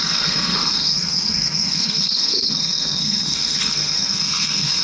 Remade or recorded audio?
remade